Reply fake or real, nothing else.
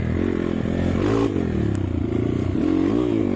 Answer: real